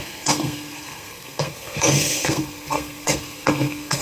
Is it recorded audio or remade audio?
remade